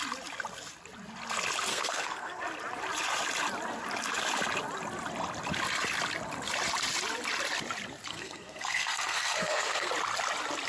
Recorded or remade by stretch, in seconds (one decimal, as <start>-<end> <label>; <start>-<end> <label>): 0.0-1.7 recorded; 1.7-2.4 remade; 2.4-8.1 recorded; 8.1-9.9 remade; 9.9-10.7 recorded